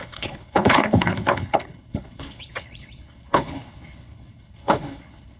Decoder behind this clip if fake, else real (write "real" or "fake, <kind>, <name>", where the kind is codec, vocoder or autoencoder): fake, codec, HILCodec